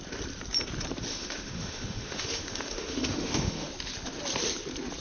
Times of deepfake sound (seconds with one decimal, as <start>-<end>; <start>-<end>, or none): 1.1-3.7